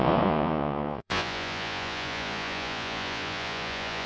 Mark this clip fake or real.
fake